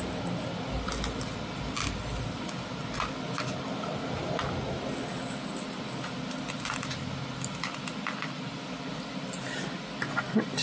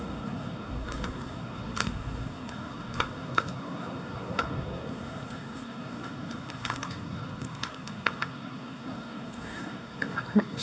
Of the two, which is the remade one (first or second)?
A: second